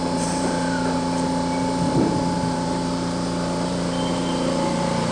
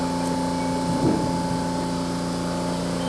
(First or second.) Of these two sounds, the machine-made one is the first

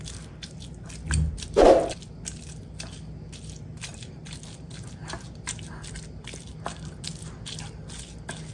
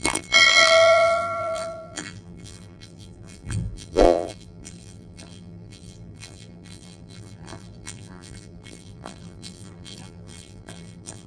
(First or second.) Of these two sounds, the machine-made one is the second